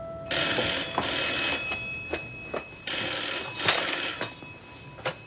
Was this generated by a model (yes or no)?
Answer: no